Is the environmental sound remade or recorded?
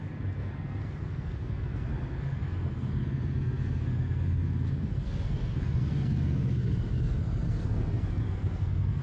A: remade